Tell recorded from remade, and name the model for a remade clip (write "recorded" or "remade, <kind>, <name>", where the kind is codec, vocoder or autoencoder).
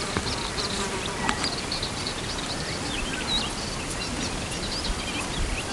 remade, vocoder, BigVGAN v2